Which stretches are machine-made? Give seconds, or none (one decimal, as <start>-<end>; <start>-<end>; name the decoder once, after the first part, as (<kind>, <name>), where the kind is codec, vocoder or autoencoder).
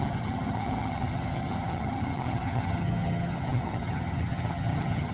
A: 0.0-5.1 (vocoder, HiFi-GAN)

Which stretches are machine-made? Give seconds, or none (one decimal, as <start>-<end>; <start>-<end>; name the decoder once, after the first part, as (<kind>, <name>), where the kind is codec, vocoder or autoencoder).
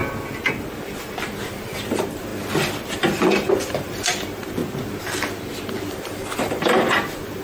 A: 1.5-4.6 (vocoder, BigVGAN v2); 5.8-7.4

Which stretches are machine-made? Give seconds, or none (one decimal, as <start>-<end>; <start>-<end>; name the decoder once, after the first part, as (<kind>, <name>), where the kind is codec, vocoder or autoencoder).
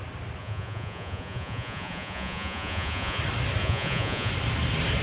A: 0.4-3.2 (vocoder, Vocos); 3.6-4.3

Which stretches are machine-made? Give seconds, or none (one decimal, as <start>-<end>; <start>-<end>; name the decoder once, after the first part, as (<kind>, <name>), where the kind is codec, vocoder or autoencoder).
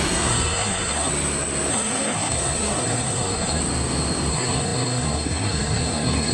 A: 0.0-1.1 (codec, SNAC); 1.7-3.6; 4.3-6.3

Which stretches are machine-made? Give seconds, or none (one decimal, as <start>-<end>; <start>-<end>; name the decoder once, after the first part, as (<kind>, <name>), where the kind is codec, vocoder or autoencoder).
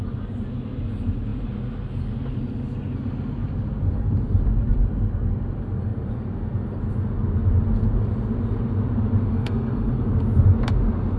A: 9.3-9.9 (codec, SNAC)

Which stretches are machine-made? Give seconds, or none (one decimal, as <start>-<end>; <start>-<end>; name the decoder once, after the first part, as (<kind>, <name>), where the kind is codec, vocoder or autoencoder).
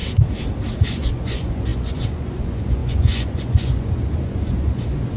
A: 0.9-5.2 (vocoder, Vocos)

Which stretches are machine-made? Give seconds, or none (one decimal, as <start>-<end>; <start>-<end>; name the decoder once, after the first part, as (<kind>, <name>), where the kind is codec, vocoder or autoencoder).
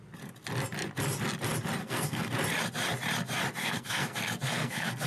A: 1.8-2.3 (codec, SNAC); 3.6-5.1